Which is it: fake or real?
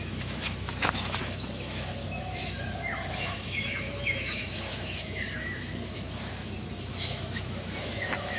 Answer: fake